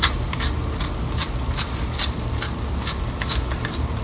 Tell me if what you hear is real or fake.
real